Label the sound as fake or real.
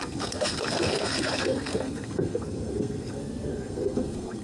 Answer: fake